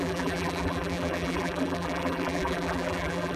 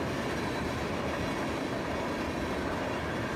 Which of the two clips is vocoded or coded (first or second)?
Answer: first